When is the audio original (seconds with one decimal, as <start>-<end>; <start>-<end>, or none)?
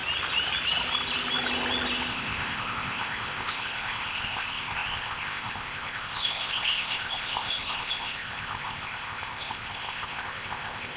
0.0-2.1